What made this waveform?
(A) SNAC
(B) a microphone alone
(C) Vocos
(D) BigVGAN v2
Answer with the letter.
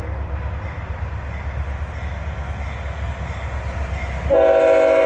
B